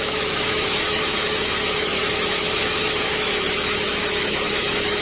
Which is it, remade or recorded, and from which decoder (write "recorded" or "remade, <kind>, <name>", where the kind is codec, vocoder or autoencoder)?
remade, autoencoder, DAC-VAE